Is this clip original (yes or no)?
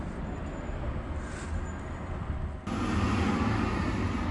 yes